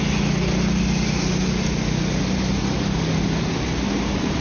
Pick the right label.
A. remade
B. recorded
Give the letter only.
B